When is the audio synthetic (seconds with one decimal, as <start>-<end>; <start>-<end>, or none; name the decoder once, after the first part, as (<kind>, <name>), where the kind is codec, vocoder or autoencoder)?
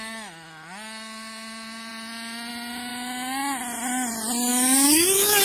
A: 4.5-5.4 (autoencoder, DAC-VAE)